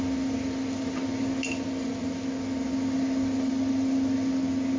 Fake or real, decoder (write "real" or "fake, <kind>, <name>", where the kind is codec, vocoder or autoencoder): real